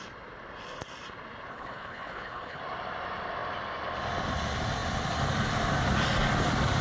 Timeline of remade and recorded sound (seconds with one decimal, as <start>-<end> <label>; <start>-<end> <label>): 0.0-1.5 recorded; 1.5-2.6 remade; 2.6-6.8 recorded